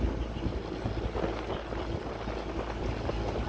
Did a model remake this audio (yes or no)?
no